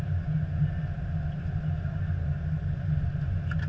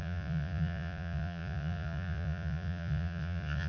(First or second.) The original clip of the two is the first